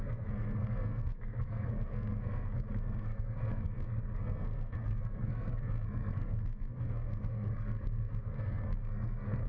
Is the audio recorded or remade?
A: remade